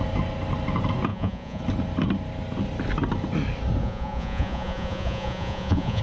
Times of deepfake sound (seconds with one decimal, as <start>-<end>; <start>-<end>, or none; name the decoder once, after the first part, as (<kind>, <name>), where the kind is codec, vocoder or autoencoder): 1.1-1.6 (vocoder, Vocos); 3.8-6.0